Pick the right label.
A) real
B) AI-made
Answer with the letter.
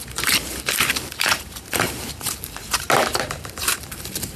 B